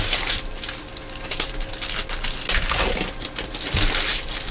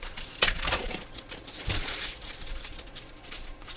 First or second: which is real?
first